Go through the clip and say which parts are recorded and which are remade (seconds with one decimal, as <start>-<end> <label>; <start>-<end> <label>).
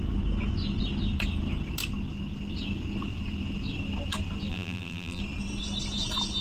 0.0-4.5 recorded; 4.5-5.2 remade; 5.2-6.4 recorded